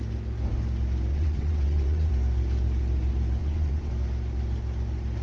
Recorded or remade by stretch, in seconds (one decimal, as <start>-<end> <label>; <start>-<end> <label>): 0.0-1.1 recorded; 1.1-2.1 remade; 2.1-3.4 recorded; 3.4-3.9 remade; 3.9-5.2 recorded